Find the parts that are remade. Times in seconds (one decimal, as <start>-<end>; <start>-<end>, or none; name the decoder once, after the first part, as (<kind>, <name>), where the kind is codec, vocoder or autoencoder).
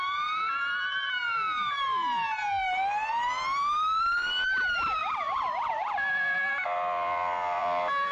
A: 0.0-5.0 (vocoder, BigVGAN v2); 5.7-8.1